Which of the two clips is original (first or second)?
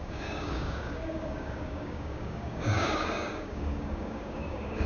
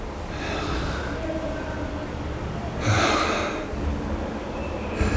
second